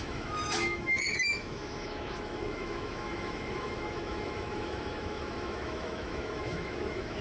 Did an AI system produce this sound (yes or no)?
yes